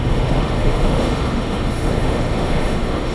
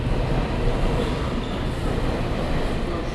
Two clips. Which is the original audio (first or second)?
second